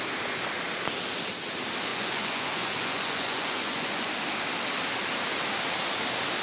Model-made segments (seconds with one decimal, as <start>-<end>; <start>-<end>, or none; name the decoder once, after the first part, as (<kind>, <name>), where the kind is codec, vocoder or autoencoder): 1.9-4.1 (vocoder, Vocos)